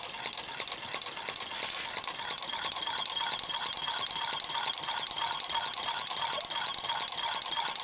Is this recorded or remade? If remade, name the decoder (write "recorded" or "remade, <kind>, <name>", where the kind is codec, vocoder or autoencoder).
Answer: recorded